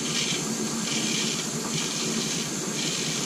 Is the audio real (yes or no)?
no